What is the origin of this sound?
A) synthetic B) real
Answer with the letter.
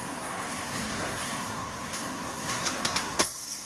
A